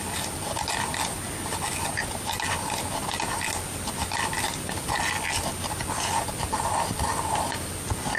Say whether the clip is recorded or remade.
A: recorded